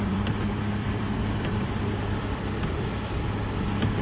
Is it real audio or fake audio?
fake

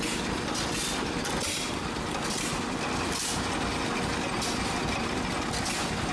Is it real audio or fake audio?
real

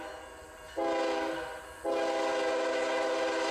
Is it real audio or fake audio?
real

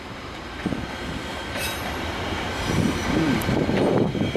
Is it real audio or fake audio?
fake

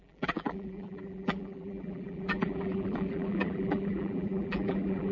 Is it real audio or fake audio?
fake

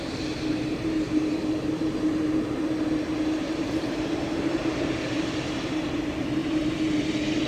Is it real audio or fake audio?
fake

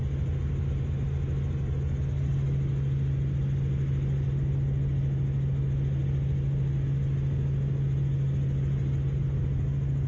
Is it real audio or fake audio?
real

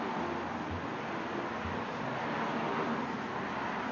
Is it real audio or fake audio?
real